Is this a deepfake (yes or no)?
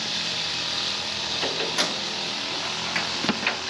yes